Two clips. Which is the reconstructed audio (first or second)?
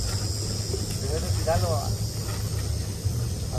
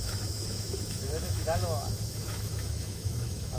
second